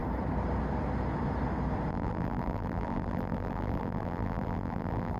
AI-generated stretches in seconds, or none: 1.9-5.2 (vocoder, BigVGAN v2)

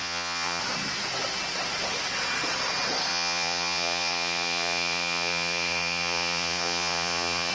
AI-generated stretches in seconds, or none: 0.0-0.6 (vocoder, Vocos); 3.1-7.5

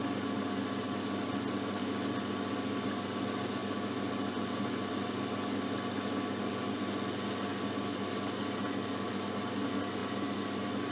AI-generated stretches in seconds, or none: none

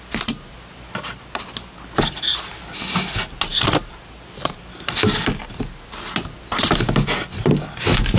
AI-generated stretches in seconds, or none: 3.5-5.4 (vocoder, BigVGAN v2)

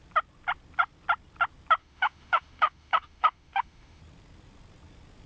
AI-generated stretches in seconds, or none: 1.8-4.0 (autoencoder, DAC-VAE)

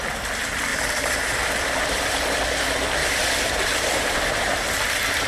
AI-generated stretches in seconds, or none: 0.7-2.4 (vocoder, BigVGAN v2); 3.0-5.3

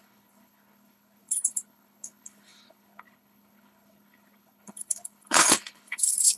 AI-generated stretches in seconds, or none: 0.0-6.4 (codec, HILCodec)